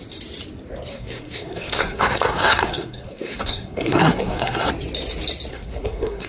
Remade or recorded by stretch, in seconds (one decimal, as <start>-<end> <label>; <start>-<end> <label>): 0.0-0.9 recorded; 0.9-4.7 remade; 4.7-5.5 recorded; 5.5-6.3 remade